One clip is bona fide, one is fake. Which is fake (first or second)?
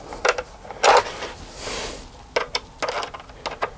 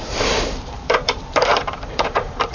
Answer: second